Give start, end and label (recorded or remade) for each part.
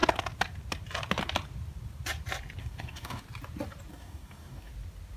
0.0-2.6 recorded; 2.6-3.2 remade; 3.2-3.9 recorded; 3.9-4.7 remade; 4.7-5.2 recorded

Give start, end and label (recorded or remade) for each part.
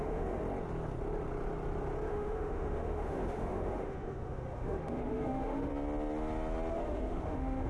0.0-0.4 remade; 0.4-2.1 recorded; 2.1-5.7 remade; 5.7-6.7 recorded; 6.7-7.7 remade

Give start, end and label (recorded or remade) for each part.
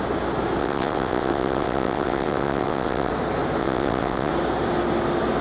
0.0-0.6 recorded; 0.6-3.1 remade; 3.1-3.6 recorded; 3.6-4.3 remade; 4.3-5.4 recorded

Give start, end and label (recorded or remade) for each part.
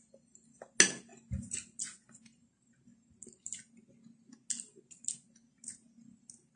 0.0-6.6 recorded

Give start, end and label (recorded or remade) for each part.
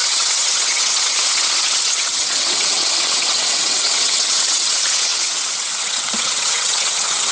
0.0-7.3 remade